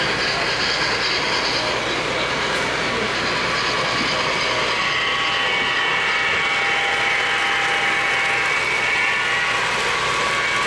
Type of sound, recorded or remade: recorded